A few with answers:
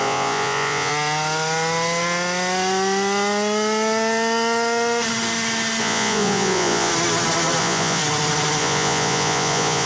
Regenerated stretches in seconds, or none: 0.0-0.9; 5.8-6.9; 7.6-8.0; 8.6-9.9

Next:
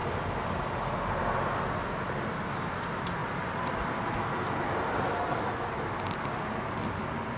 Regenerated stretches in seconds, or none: none

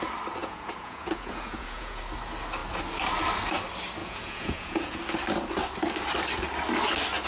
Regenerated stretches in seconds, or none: 0.4-2.0; 4.0-5.0

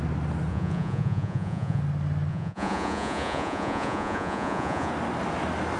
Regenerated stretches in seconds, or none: 0.5-1.8; 2.3-4.9

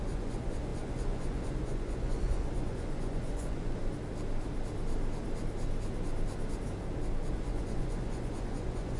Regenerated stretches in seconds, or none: 0.0-3.8; 7.3-9.0

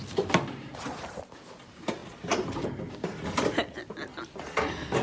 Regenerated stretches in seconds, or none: none

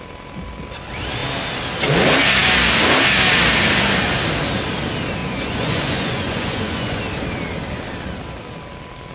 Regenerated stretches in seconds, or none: 5.2-7.0